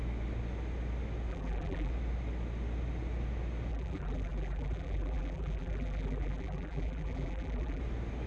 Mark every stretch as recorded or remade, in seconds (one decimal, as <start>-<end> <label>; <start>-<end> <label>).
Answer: 0.0-1.3 recorded; 1.3-1.9 remade; 1.9-3.7 recorded; 3.7-7.8 remade; 7.8-8.3 recorded